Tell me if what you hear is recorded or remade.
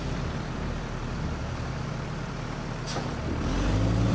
remade